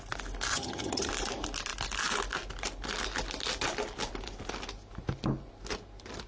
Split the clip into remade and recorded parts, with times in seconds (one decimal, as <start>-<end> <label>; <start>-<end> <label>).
0.0-0.5 recorded; 0.5-1.1 remade; 1.1-6.3 recorded

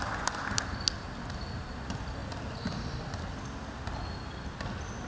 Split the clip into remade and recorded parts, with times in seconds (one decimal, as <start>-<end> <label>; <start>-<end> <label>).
0.0-5.1 recorded

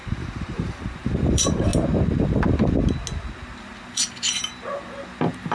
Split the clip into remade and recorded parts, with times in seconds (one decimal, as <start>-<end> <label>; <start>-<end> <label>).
0.0-1.7 remade; 1.7-3.6 recorded; 3.6-5.5 remade

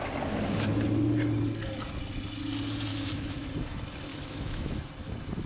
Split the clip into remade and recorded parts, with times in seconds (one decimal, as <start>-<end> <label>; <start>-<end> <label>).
0.0-2.9 recorded; 2.9-3.5 remade; 3.5-4.1 recorded; 4.1-4.9 remade; 4.9-5.5 recorded

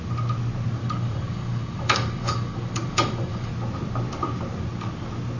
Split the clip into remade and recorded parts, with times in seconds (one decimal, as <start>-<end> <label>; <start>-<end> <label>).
0.0-0.8 recorded; 0.8-3.5 remade; 3.5-5.4 recorded

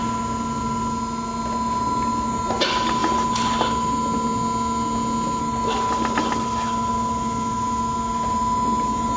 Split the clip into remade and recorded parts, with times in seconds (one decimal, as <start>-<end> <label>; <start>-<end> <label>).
0.0-9.2 recorded